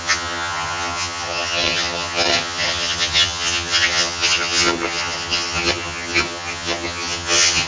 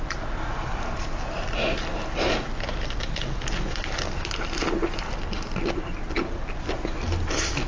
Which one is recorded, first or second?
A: second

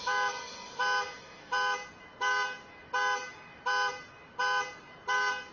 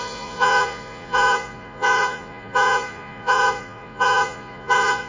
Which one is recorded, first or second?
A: first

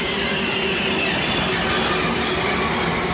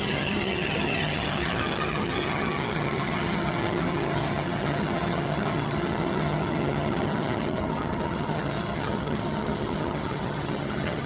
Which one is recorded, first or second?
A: first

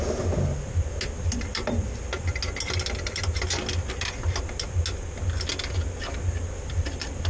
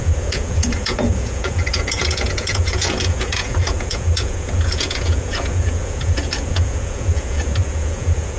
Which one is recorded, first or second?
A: first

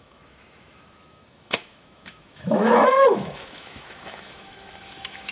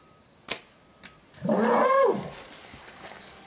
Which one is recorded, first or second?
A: second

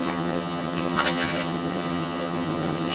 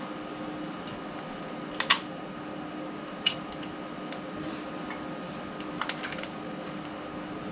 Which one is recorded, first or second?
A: second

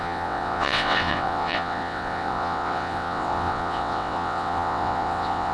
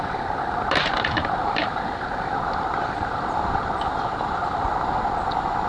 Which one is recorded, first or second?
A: second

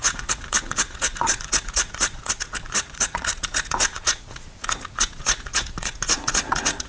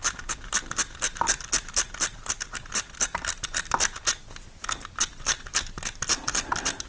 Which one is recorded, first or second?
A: second